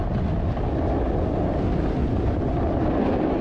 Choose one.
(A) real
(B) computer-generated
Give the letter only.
A